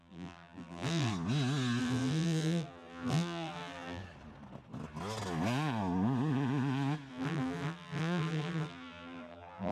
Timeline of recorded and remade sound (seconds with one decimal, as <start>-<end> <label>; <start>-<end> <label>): 0.0-1.1 remade; 1.1-1.8 recorded; 1.8-4.0 remade; 4.0-7.1 recorded; 7.1-9.7 remade